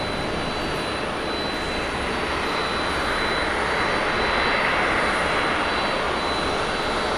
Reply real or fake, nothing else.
real